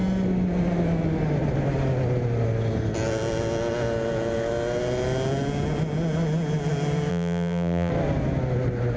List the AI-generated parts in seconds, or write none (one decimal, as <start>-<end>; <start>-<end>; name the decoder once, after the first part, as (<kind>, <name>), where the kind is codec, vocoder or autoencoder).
7.1-7.9 (vocoder, BigVGAN v2)